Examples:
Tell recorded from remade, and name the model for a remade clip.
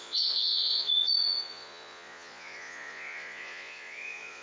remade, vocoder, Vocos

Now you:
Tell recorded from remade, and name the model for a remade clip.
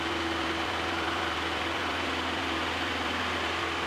remade, vocoder, BigVGAN v2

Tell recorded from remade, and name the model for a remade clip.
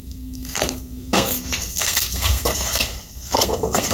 remade, codec, SNAC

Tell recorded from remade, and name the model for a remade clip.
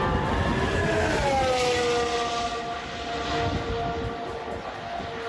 recorded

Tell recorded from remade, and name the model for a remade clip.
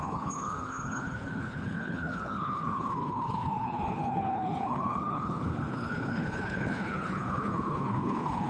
remade, codec, HILCodec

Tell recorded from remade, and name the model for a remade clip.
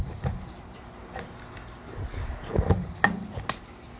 recorded